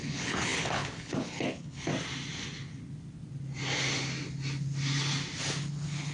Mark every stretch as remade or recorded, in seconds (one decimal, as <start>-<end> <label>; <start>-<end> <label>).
0.0-1.9 remade; 1.9-5.6 recorded; 5.6-6.1 remade